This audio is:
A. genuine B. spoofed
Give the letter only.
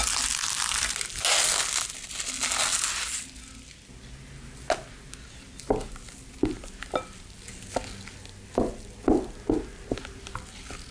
A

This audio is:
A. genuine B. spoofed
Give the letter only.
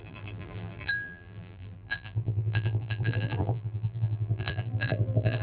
B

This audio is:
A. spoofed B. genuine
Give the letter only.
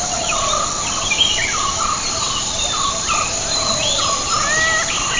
B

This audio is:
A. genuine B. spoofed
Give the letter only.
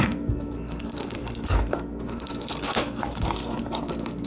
B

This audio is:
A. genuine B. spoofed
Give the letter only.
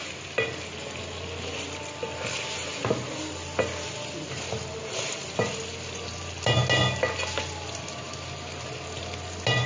A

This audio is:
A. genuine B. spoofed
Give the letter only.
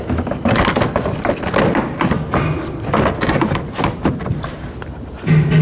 A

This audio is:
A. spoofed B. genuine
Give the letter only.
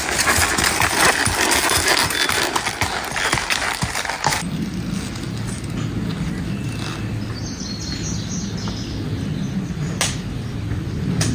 B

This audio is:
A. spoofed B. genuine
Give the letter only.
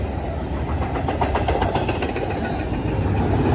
B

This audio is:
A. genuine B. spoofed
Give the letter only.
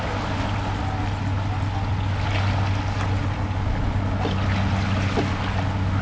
A